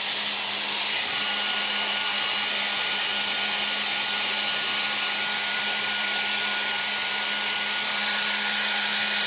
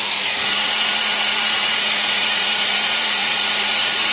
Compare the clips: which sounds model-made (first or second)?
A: second